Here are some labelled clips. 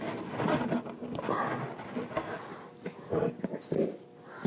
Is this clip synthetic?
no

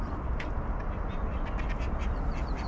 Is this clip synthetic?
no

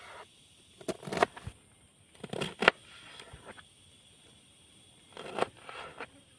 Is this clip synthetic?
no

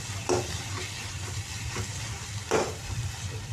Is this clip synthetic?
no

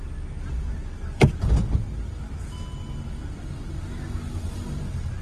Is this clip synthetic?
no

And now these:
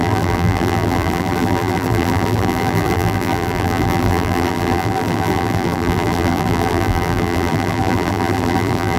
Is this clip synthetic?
yes